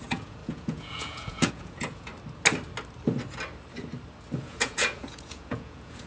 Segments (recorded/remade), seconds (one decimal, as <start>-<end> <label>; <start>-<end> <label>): 0.0-2.1 remade; 2.1-4.4 recorded; 4.4-6.1 remade